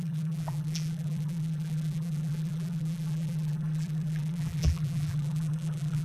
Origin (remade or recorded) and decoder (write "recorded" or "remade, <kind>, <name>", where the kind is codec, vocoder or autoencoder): remade, vocoder, BigVGAN v2